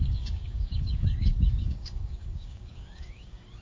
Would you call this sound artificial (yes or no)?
yes